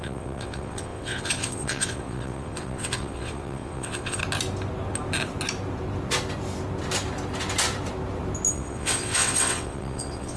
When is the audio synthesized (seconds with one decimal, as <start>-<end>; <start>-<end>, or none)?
0.0-4.2; 8.5-10.4